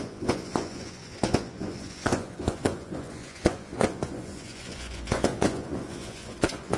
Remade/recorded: remade